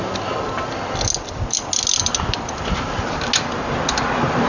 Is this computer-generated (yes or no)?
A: no